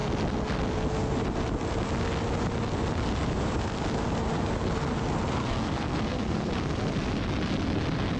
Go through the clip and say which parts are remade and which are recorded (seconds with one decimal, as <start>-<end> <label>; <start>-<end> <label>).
0.0-5.4 recorded; 5.4-6.5 remade; 6.5-8.2 recorded